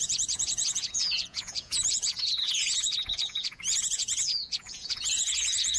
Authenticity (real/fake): fake